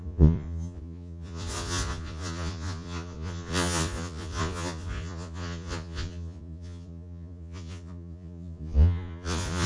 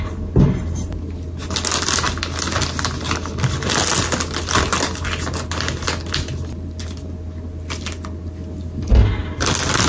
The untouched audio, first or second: second